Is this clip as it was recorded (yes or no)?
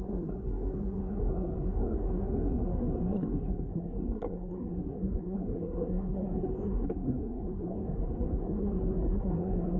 no